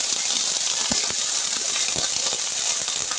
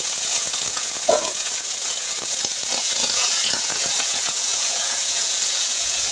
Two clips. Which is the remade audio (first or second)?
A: second